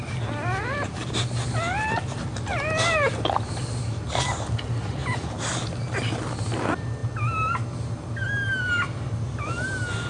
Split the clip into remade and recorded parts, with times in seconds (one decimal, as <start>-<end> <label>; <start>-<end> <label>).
0.0-10.1 recorded